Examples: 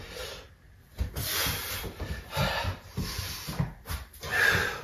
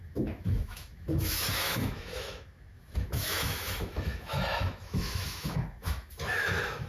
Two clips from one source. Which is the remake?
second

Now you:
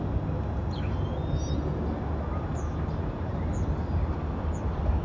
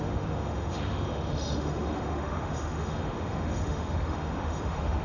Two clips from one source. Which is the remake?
second